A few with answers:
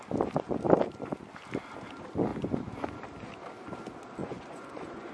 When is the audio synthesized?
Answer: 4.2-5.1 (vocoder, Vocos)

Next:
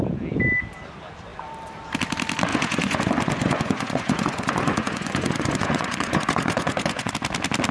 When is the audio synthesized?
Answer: 2.5-7.1 (vocoder, Vocos)

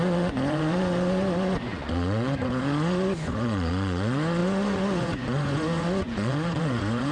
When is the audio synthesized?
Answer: 0.0-7.1 (vocoder, Vocos)

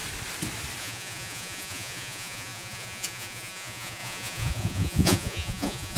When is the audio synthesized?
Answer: 0.8-6.0 (vocoder, Vocos)

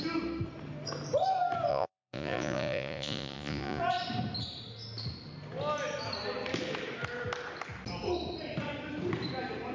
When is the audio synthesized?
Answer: 1.7-3.8 (vocoder, Vocos)

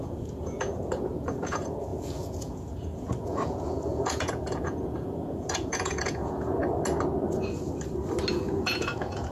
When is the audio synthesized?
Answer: 0.0-6.6 (vocoder, Vocos); 8.3-9.3